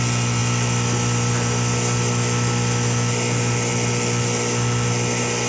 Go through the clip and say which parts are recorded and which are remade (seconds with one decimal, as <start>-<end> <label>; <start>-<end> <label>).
0.0-5.5 recorded